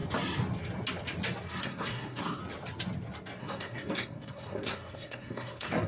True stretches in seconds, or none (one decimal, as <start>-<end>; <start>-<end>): 0.0-1.6; 2.4-3.4